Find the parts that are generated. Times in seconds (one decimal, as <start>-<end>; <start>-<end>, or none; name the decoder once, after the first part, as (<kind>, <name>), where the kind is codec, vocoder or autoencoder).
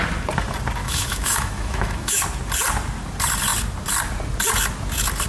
0.8-2.2 (autoencoder, DAC-VAE)